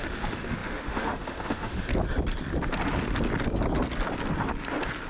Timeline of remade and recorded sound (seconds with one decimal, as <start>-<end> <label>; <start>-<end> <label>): 0.0-1.9 remade; 1.9-5.1 recorded